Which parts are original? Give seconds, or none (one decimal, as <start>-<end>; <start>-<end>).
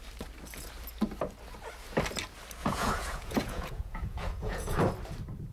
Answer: 0.0-2.6; 4.8-5.5